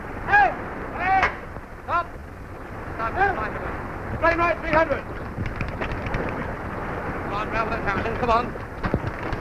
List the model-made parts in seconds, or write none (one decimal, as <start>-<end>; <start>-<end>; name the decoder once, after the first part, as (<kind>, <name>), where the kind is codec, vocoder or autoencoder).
2.2-3.3 (vocoder, BigVGAN v2)